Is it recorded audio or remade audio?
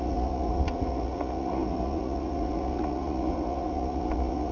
remade